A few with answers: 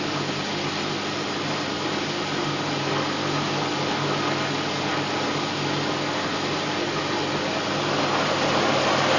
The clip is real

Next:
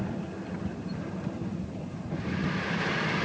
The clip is real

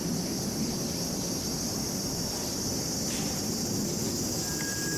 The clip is fake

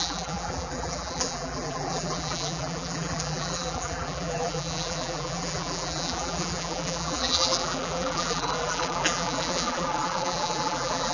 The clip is fake